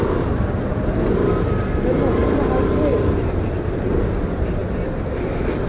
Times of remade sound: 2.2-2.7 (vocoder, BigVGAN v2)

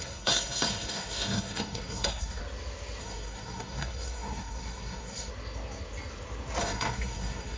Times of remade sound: 0.0-2.4 (codec, SNAC); 3.0-5.3; 6.6-7.6

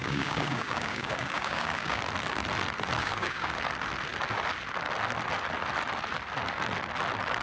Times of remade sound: 0.0-2.0 (codec, DAC); 3.0-3.5

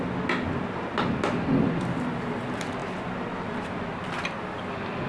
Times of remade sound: none

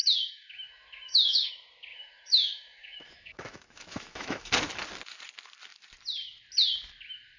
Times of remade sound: 0.0-1.5 (autoencoder, DAC-VAE); 1.9-4.5

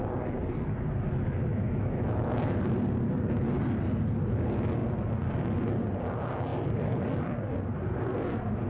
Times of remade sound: 1.5-2.4 (autoencoder, DAC-VAE)

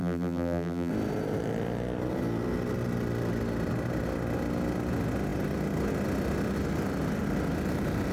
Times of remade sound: 0.0-0.9 (vocoder, BigVGAN v2)